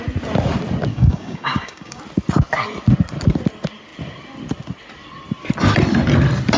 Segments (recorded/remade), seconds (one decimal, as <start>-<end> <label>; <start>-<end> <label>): 0.0-0.9 recorded; 0.9-2.0 remade; 2.0-6.6 recorded